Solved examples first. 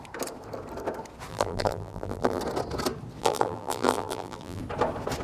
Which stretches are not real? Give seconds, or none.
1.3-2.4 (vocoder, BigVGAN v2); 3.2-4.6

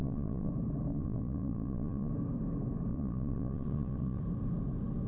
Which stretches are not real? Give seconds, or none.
0.0-0.5 (vocoder, Vocos); 0.9-2.1; 2.9-4.2

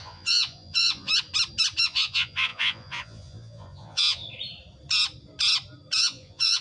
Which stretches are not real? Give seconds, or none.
0.0-1.1 (vocoder, Vocos); 1.8-4.2; 6.0-6.6

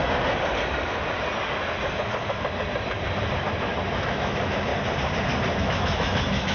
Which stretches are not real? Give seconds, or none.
3.9-4.7 (autoencoder, DAC-VAE); 5.6-6.5

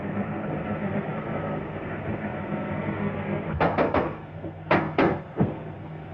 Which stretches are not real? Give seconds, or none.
0.0-6.1 (codec, SNAC)